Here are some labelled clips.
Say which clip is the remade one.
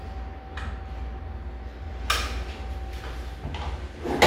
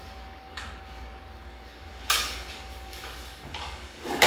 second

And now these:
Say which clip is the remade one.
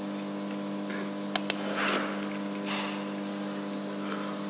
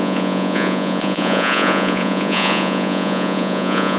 second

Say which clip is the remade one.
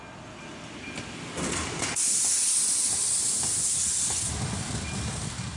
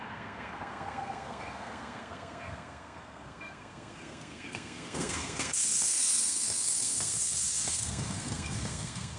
second